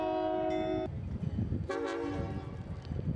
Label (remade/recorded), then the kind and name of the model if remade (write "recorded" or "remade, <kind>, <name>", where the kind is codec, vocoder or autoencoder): recorded